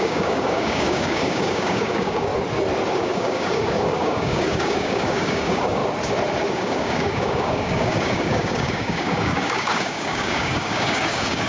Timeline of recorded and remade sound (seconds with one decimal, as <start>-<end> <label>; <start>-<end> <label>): 0.0-2.3 remade; 2.3-2.9 recorded; 2.9-5.8 remade; 5.8-6.5 recorded; 6.5-11.5 remade